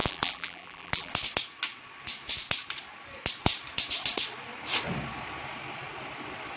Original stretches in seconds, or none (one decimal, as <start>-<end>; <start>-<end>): 1.1-6.6